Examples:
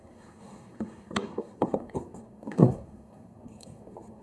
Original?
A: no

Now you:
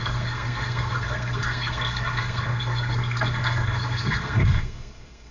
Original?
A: no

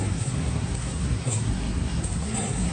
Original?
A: no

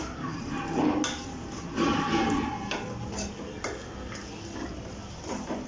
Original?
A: yes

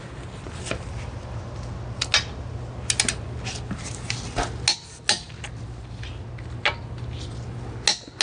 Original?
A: yes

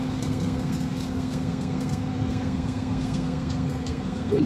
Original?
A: no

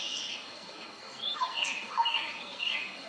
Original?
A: no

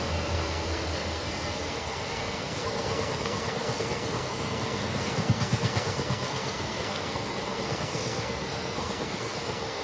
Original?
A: no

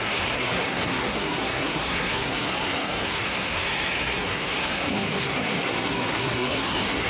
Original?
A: no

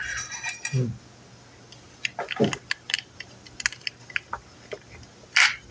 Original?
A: yes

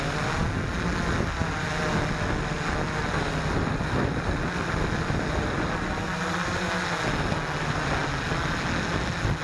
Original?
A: yes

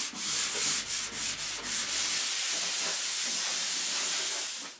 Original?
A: yes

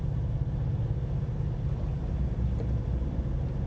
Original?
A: yes